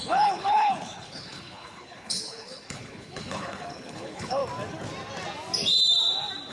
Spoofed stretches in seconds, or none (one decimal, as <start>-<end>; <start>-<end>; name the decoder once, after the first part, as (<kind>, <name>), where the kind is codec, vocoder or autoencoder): 0.0-4.4 (codec, HILCodec)